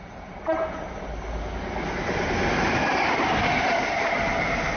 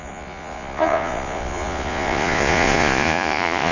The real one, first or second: first